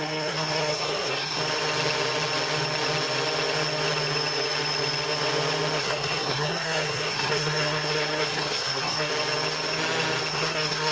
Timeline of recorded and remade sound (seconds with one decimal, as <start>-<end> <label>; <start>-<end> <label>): 0.0-1.4 remade; 1.4-5.8 recorded; 5.8-9.1 remade; 9.1-10.3 recorded; 10.3-10.9 remade